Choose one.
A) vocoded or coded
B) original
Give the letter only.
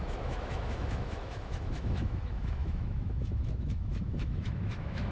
A